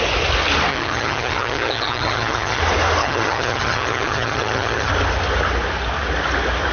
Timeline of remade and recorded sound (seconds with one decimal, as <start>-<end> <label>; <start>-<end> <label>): 0.0-0.7 recorded; 0.7-2.6 remade; 2.6-3.0 recorded; 3.0-4.9 remade; 4.9-6.7 recorded